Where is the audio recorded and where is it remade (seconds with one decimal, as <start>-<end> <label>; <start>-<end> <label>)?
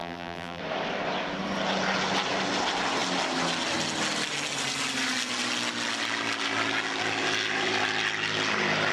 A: 0.0-0.6 remade; 0.6-8.9 recorded